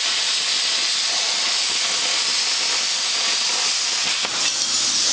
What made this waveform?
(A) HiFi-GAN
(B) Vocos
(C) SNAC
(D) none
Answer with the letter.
D